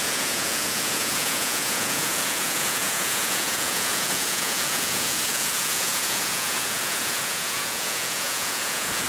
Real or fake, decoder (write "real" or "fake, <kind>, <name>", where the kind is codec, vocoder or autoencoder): fake, vocoder, Vocos